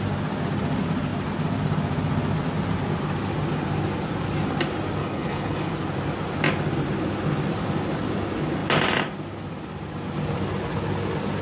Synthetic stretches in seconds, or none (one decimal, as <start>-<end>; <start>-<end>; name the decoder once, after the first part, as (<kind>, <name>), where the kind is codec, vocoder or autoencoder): 5.0-5.7 (codec, HILCodec)